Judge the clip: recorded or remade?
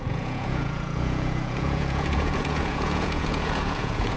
remade